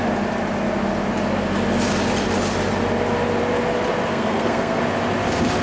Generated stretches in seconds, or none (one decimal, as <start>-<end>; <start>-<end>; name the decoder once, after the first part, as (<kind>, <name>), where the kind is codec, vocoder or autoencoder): 4.1-4.8 (codec, SNAC)